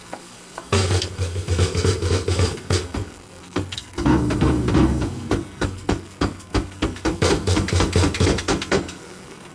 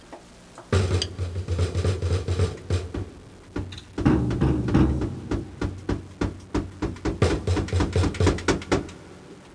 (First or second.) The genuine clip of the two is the second